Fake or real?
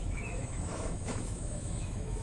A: fake